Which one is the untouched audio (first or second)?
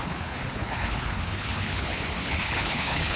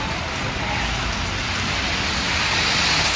second